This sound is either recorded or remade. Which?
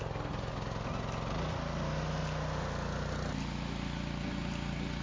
recorded